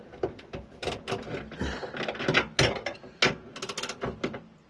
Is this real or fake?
real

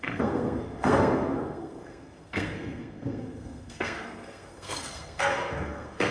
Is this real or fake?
fake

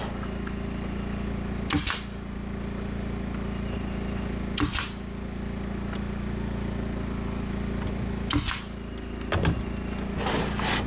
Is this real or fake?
real